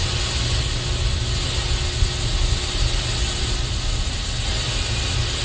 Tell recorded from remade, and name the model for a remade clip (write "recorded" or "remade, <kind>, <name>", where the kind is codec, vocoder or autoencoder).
recorded